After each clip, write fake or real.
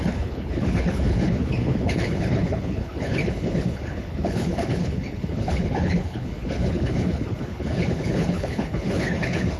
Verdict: fake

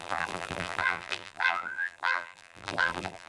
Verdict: fake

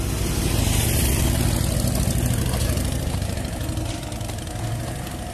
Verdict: fake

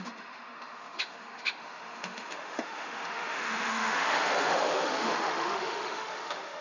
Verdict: fake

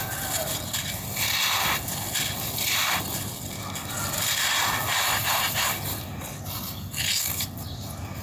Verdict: real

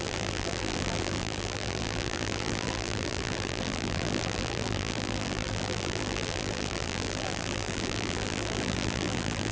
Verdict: fake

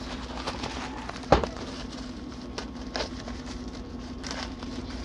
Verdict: fake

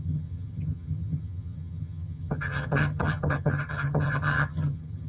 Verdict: fake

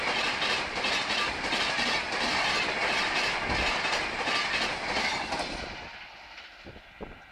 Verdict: real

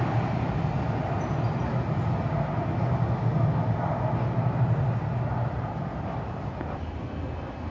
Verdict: real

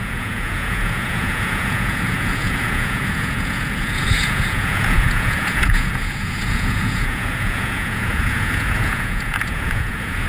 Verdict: fake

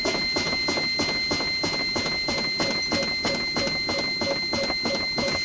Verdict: real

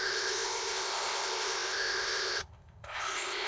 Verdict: fake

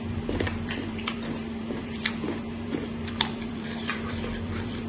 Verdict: fake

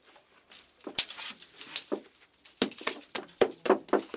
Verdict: real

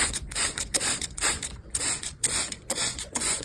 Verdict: fake